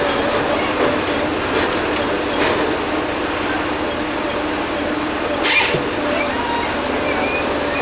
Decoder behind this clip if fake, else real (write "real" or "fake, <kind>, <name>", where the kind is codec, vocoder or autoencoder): real